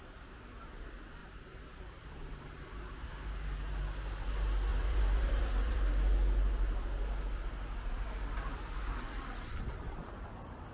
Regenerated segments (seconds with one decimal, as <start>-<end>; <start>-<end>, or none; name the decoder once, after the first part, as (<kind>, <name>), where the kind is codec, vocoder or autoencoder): 1.2-3.1 (vocoder, BigVGAN v2); 4.7-5.9